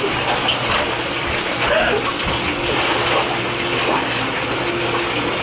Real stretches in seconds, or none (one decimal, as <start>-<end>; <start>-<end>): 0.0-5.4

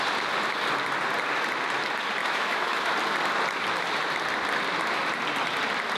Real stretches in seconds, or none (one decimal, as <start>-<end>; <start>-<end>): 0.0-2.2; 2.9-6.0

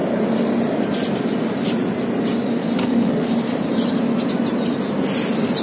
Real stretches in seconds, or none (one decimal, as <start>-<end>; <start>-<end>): 0.0-2.8; 3.3-5.6

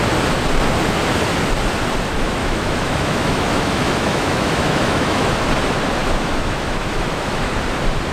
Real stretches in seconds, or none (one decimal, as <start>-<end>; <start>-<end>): 0.0-2.4; 5.3-6.0; 7.5-8.1